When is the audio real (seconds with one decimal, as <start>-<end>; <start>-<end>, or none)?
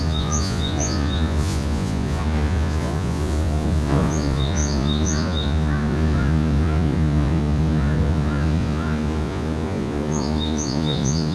none